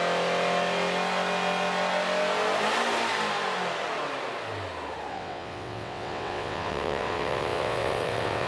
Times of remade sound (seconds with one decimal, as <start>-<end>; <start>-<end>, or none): 5.1-8.5